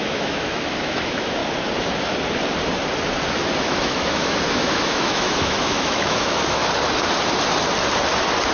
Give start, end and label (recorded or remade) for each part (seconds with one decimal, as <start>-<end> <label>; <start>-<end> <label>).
0.0-1.4 remade; 1.4-3.6 recorded; 3.6-6.6 remade; 6.6-8.5 recorded